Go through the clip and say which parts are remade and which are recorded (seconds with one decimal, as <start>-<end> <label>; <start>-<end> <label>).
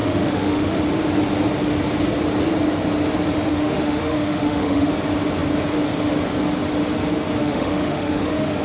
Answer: 0.0-0.8 remade; 0.8-3.5 recorded; 3.5-4.9 remade; 4.9-7.4 recorded; 7.4-8.6 remade